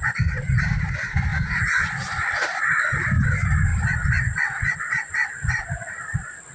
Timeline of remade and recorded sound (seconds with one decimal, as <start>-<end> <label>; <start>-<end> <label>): 0.0-1.3 recorded; 1.3-3.3 remade; 3.3-3.7 recorded; 3.7-6.5 remade